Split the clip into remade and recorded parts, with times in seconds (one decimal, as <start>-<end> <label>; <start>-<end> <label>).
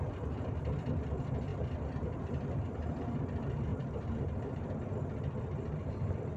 0.0-1.5 recorded; 1.5-3.0 remade; 3.0-3.7 recorded; 3.7-4.8 remade; 4.8-6.4 recorded